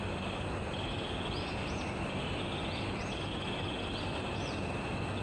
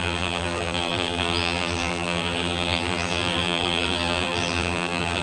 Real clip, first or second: first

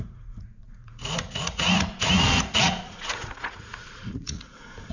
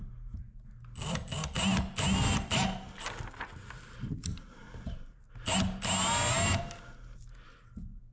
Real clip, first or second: second